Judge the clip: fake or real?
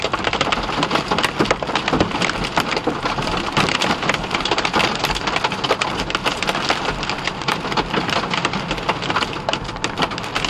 real